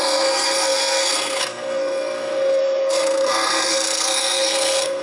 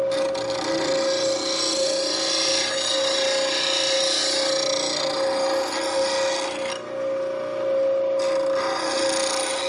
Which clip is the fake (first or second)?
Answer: first